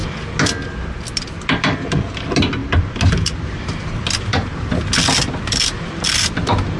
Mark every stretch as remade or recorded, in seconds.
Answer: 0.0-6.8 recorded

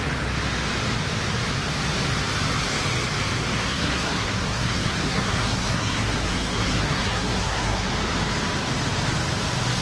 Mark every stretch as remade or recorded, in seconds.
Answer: 0.0-3.5 recorded; 3.5-7.9 remade; 7.9-9.8 recorded

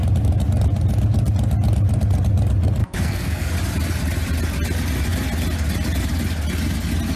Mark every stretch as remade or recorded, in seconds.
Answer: 0.0-2.8 recorded; 2.8-3.5 remade; 3.5-7.2 recorded

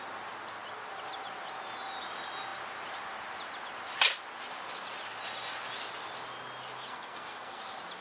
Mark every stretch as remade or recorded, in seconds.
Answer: 0.0-6.9 recorded; 6.9-7.6 remade; 7.6-8.0 recorded

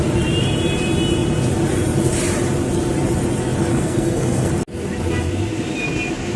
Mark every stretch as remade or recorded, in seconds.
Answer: 0.0-3.7 recorded; 3.7-4.5 remade; 4.5-6.4 recorded

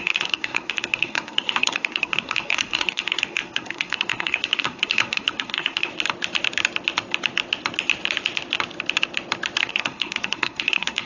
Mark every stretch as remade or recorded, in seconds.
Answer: 0.0-5.9 remade; 5.9-9.6 recorded; 9.6-11.1 remade